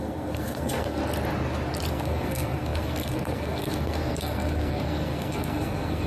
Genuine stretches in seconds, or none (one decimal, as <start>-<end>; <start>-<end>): 1.0-1.9